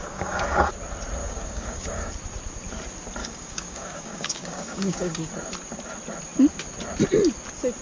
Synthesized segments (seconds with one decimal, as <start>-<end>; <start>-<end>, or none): 0.0-0.7; 1.2-2.1; 3.2-5.3